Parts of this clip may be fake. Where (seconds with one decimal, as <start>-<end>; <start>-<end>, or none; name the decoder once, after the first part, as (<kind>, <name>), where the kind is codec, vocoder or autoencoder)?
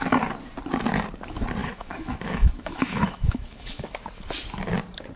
1.6-3.9 (autoencoder, DAC-VAE)